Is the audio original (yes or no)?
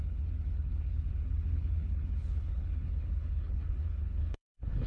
no